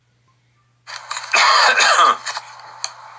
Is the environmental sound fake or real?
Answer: real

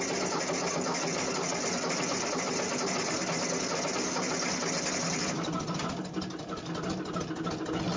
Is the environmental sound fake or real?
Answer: real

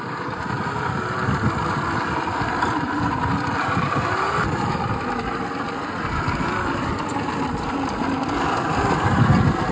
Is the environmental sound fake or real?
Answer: fake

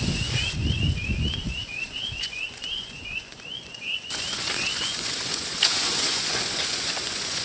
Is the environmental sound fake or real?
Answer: fake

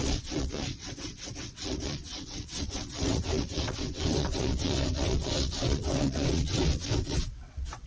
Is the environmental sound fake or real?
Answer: fake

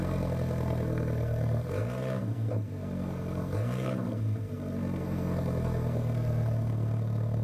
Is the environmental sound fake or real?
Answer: fake